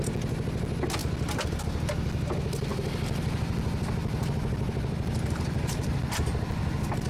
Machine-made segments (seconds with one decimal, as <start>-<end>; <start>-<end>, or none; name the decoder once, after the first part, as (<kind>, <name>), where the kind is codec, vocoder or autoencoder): 1.0-1.6 (vocoder, BigVGAN v2); 2.7-7.1